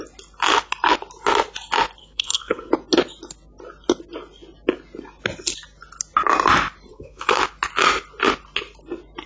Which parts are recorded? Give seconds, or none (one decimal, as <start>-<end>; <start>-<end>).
0.0-2.0; 2.7-6.9; 7.4-9.3